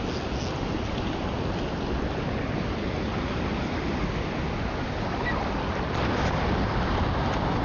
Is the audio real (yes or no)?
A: yes